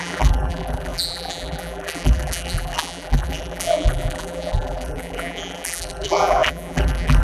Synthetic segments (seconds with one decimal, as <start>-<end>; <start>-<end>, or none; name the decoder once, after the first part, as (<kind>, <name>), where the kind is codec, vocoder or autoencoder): 0.0-7.2 (vocoder, BigVGAN v2)